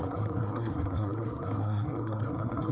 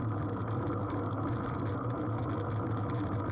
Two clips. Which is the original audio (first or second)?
second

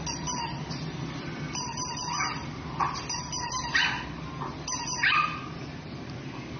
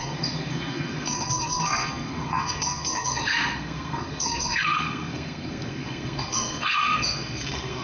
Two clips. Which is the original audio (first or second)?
first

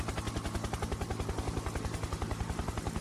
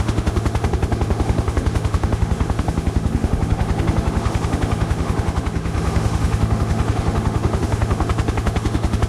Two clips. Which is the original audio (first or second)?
first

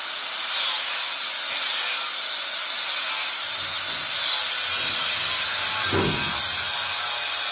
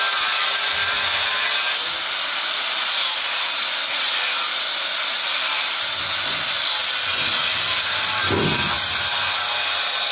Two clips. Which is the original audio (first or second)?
first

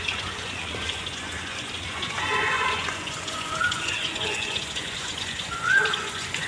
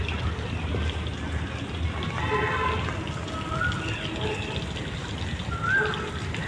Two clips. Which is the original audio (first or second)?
second